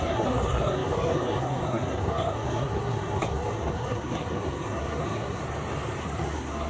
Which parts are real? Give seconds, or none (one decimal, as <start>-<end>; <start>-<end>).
5.4-6.0